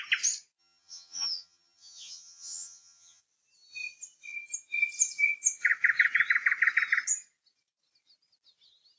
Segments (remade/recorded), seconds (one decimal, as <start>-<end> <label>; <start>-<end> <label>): 0.0-0.6 recorded; 0.6-3.2 remade; 3.2-9.0 recorded